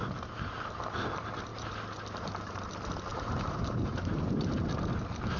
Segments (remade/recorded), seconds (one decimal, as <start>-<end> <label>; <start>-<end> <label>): 0.0-1.5 recorded; 1.5-2.7 remade; 2.7-3.1 recorded; 3.1-4.5 remade; 4.5-5.4 recorded